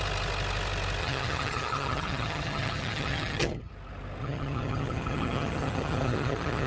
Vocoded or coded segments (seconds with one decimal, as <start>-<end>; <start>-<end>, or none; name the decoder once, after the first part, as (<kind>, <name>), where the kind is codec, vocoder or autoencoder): 1.0-3.7 (vocoder, HiFi-GAN); 4.2-6.7